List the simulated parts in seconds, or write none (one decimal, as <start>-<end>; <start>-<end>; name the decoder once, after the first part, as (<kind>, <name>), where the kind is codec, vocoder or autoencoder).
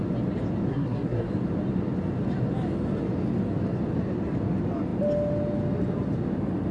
0.7-1.3 (codec, SNAC)